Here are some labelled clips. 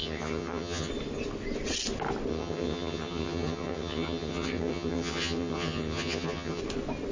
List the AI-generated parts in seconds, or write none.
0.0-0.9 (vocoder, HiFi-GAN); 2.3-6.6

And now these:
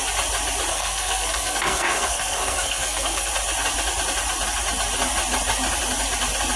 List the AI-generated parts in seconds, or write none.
0.7-3.3 (codec, SNAC)

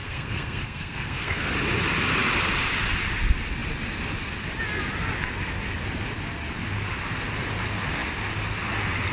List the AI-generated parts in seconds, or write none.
0.0-1.5 (codec, SNAC)

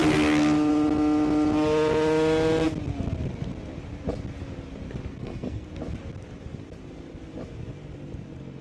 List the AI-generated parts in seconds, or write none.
5.1-5.7 (codec, SNAC)

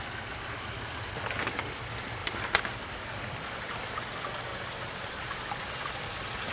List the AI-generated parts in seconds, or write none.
2.2-2.7 (vocoder, BigVGAN v2); 4.5-5.4

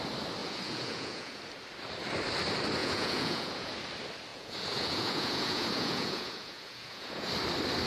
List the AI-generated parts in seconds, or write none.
0.4-1.4 (vocoder, Vocos); 2.8-3.7; 4.3-7.3